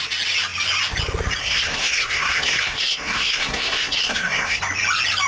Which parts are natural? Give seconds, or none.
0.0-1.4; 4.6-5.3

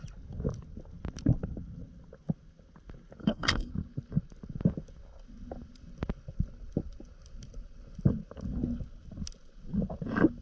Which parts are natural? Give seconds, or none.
0.0-3.2; 3.7-10.4

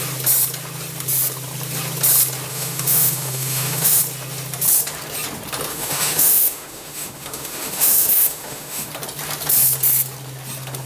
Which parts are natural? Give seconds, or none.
0.0-2.5; 4.0-5.7; 8.9-10.9

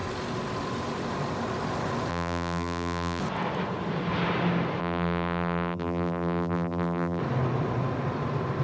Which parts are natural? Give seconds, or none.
0.0-2.1; 3.2-4.8; 7.2-8.6

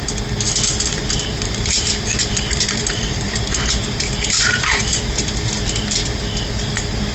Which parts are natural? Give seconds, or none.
0.0-1.3; 5.2-7.1